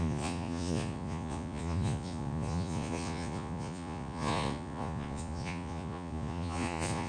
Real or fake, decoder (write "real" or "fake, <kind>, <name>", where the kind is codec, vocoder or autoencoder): fake, vocoder, Vocos